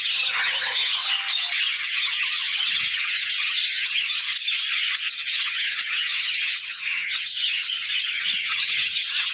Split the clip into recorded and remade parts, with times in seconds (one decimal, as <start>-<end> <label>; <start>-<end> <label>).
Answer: 0.0-1.0 remade; 1.0-1.7 recorded; 1.7-4.1 remade; 4.1-5.1 recorded; 5.1-9.3 remade